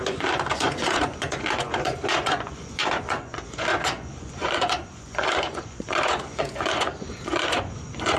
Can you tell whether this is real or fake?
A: fake